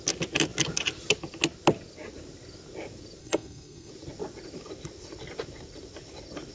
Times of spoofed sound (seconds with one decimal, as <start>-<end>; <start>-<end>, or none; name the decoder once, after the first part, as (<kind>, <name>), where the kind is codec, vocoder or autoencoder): 3.2-3.9 (codec, SNAC)